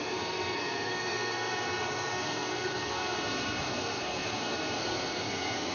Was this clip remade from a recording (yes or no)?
yes